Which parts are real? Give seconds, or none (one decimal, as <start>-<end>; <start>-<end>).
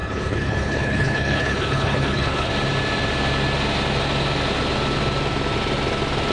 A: 2.5-6.3